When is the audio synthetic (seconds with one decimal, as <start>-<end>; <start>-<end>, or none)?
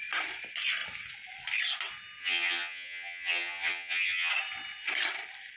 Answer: 2.2-4.3